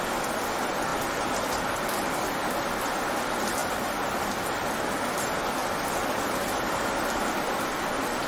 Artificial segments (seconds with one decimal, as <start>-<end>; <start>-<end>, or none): none